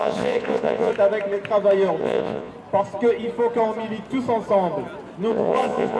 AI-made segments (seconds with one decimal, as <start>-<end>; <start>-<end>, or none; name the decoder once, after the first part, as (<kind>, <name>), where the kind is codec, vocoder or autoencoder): 0.0-0.9 (vocoder, Vocos); 2.0-2.5; 5.3-6.0